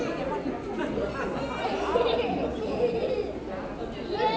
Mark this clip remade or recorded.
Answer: recorded